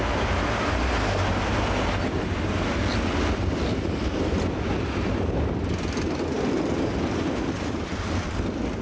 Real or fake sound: real